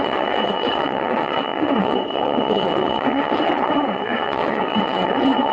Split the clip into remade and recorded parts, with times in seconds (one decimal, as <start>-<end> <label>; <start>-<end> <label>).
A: 0.0-5.5 remade

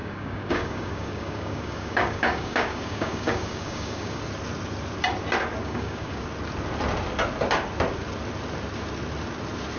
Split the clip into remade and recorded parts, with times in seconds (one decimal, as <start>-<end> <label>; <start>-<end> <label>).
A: 0.0-4.2 remade; 4.2-5.6 recorded; 5.6-6.2 remade; 6.2-9.8 recorded

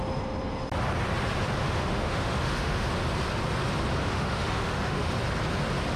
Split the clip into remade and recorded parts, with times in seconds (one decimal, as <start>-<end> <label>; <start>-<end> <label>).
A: 0.0-1.6 recorded; 1.6-2.9 remade; 2.9-4.0 recorded; 4.0-5.1 remade; 5.1-6.0 recorded

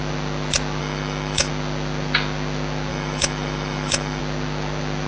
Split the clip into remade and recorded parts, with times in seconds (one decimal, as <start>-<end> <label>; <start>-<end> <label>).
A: 0.0-0.8 recorded; 0.8-1.5 remade; 1.5-2.9 recorded; 2.9-4.2 remade; 4.2-5.1 recorded

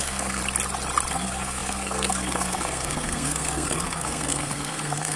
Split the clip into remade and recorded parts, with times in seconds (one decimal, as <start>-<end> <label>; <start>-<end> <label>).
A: 0.0-0.4 remade; 0.4-1.1 recorded; 1.1-5.2 remade

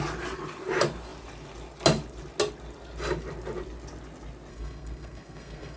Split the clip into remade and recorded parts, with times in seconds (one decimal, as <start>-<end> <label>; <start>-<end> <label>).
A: 0.0-4.5 recorded; 4.5-5.8 remade

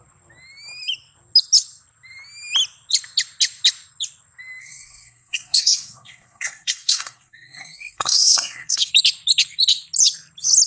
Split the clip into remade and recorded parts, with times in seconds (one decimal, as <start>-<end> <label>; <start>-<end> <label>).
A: 0.0-4.6 recorded; 4.6-8.9 remade; 8.9-10.7 recorded

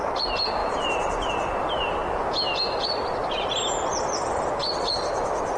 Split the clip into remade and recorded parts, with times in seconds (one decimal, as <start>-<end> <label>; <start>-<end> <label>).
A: 0.0-0.6 recorded; 0.6-1.3 remade; 1.3-5.6 recorded